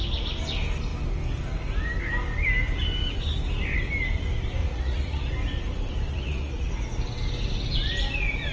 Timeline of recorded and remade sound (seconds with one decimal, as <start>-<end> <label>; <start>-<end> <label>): 0.0-4.6 recorded; 4.6-5.3 remade; 5.3-6.1 recorded; 6.1-6.7 remade; 6.7-8.5 recorded